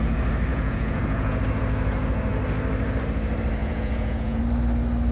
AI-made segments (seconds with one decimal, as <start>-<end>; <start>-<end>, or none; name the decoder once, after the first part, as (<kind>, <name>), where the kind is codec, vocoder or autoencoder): 0.5-1.4 (vocoder, Vocos); 3.6-4.4